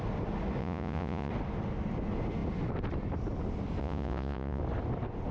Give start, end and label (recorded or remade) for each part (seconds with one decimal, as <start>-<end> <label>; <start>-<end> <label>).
0.0-0.6 recorded; 0.6-1.3 remade; 1.3-3.8 recorded; 3.8-4.6 remade; 4.6-5.3 recorded